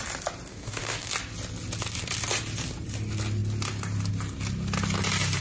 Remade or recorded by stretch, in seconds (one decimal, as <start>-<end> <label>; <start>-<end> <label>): 0.0-0.5 recorded; 0.5-1.1 remade; 1.1-5.4 recorded